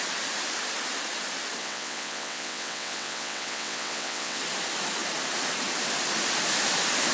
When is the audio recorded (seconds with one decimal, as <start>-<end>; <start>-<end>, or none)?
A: 0.0-1.6; 4.4-7.1